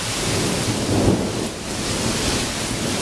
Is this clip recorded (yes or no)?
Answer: yes